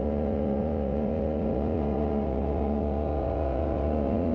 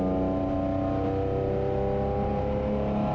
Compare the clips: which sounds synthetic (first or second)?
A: first